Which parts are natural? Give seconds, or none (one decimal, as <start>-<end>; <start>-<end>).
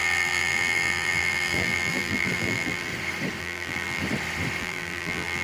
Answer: 2.9-3.4; 4.0-4.6